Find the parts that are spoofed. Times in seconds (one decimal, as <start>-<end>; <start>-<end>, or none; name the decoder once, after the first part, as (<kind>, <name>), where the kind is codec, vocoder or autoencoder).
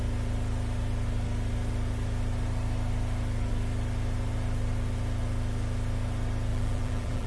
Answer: 6.5-7.3 (vocoder, BigVGAN v2)